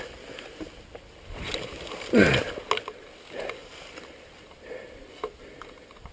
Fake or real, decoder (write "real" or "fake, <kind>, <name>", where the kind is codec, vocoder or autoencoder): real